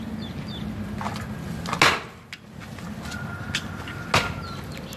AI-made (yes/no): no